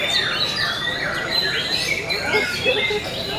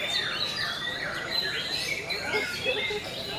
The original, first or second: first